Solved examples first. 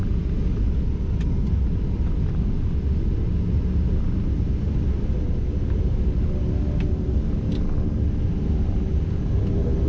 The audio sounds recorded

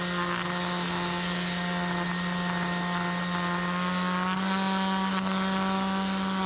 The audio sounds recorded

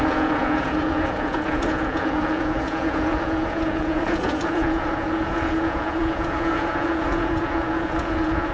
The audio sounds remade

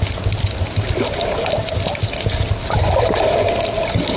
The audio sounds recorded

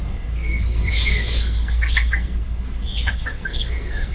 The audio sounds remade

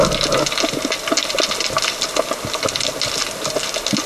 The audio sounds recorded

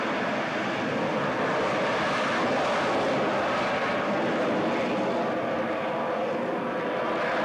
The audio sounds recorded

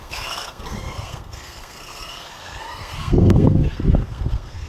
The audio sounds remade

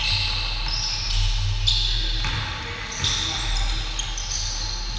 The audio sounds recorded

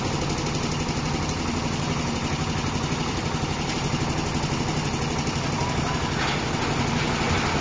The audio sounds recorded